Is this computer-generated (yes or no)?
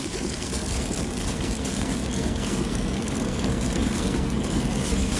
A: yes